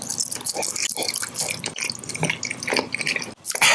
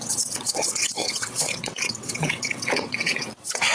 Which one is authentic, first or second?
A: first